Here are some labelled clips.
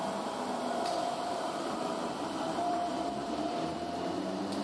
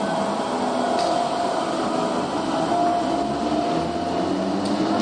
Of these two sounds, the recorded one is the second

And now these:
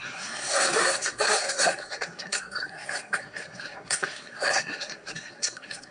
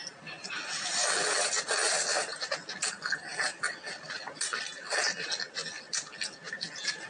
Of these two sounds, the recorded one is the second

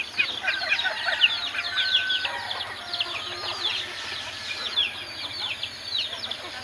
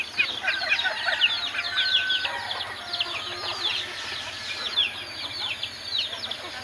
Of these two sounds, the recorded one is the second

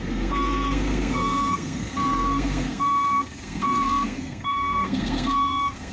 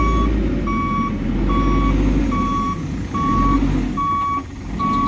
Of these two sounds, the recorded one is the second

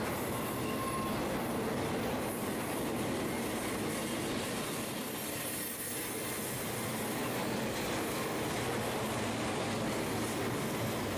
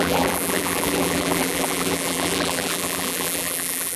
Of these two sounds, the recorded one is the first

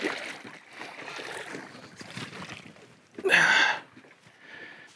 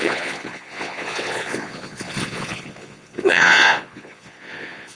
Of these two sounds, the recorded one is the first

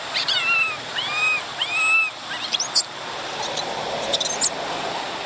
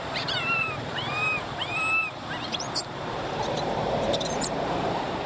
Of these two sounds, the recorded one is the first